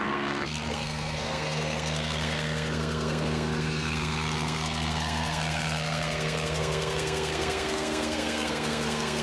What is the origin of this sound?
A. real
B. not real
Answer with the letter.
B